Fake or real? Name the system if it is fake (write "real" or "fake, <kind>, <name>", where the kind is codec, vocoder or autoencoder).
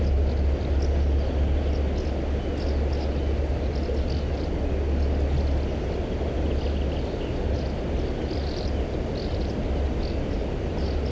real